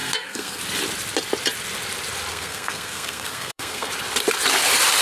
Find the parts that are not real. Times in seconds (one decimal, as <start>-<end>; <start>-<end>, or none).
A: 0.0-0.6; 2.3-3.9

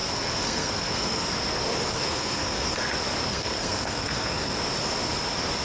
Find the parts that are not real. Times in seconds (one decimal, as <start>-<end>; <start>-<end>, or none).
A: 0.0-1.3; 1.9-2.7; 3.3-4.6

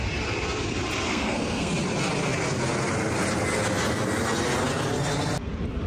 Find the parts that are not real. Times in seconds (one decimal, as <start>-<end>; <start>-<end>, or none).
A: 1.1-1.7

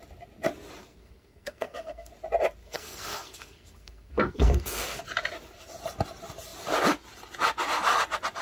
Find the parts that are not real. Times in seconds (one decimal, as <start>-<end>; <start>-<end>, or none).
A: 0.8-2.1; 2.6-5.0

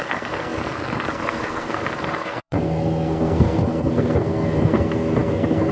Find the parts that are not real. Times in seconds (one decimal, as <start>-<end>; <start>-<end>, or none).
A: 0.0-5.7

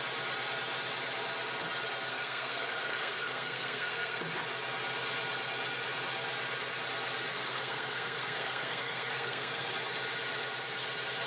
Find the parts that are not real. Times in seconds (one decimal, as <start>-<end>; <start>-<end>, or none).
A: 2.1-4.2; 7.3-9.7

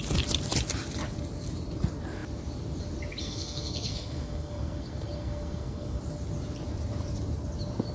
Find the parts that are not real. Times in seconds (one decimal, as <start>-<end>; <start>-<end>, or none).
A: 3.2-6.0